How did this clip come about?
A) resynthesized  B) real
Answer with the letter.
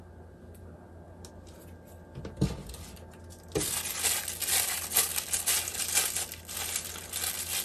B